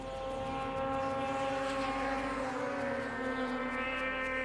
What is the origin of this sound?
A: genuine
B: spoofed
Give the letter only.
A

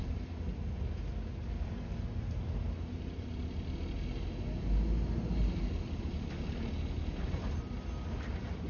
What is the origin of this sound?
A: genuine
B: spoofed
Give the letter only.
A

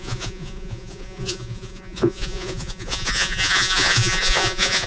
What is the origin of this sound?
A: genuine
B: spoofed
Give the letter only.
B